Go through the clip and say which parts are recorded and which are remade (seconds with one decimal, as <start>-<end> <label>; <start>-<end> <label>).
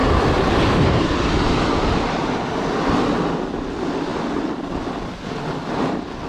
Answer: 0.0-6.3 recorded